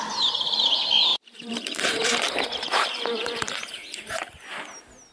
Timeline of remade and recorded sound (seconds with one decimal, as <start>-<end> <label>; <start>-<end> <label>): 0.0-1.1 recorded; 1.1-4.2 remade; 4.2-5.1 recorded